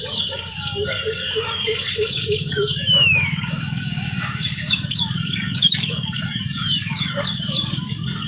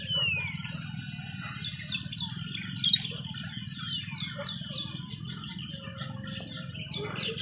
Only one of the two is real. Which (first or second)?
second